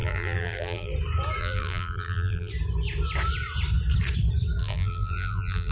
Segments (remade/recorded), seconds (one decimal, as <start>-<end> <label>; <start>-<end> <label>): 0.0-0.9 remade; 0.9-1.4 recorded; 1.4-2.5 remade; 2.5-4.6 recorded; 4.6-5.7 remade